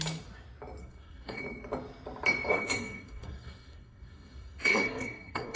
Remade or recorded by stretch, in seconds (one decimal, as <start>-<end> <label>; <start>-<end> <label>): 0.0-0.8 recorded; 0.8-1.4 remade; 1.4-2.5 recorded; 2.5-5.6 remade